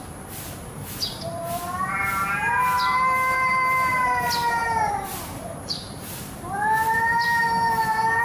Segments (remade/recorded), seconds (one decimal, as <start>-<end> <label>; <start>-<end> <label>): 0.0-8.2 remade